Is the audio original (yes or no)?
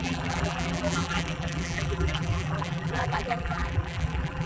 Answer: no